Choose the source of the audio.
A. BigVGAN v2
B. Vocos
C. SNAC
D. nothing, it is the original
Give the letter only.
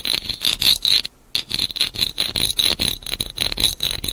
D